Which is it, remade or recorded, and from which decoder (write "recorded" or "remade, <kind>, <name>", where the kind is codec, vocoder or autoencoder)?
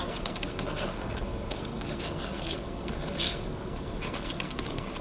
remade, codec, SNAC